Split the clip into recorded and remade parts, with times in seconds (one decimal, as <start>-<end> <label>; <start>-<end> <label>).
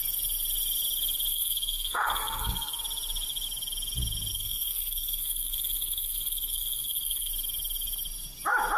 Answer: 0.0-1.3 recorded; 1.3-2.8 remade; 2.8-4.3 recorded; 4.3-7.3 remade; 7.3-8.8 recorded